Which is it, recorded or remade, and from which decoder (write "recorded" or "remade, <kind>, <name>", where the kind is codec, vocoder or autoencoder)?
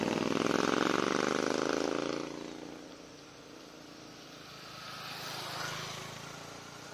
recorded